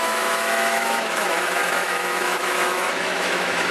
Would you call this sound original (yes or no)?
no